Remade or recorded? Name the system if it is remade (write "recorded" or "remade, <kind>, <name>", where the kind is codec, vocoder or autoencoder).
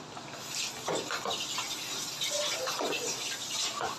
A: recorded